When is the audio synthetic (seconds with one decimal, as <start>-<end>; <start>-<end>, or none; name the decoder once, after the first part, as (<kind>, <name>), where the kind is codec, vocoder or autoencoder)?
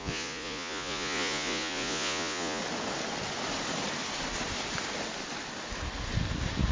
0.0-2.6 (vocoder, Vocos)